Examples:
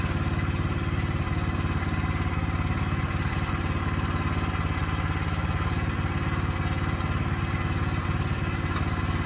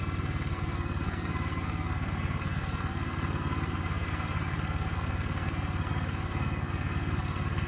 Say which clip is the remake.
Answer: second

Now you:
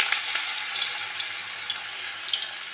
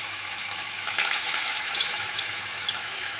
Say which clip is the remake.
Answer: second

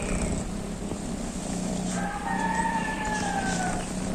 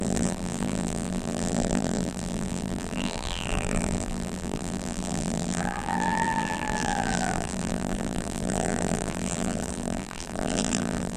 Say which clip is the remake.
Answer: second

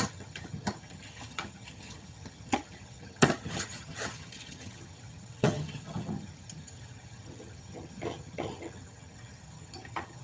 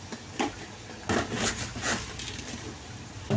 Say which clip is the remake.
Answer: first